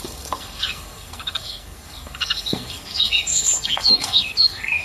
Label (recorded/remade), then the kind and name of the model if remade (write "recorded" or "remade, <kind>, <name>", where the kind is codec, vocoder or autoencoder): remade, codec, SNAC